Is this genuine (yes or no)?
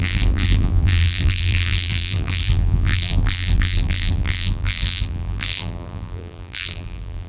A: no